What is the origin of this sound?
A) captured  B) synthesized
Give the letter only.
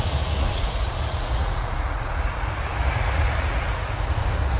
B